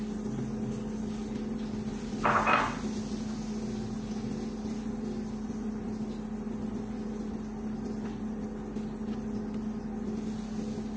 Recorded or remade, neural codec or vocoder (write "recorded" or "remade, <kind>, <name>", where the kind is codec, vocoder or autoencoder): recorded